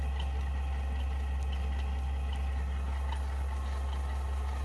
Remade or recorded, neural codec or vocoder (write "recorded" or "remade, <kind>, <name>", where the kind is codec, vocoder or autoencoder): recorded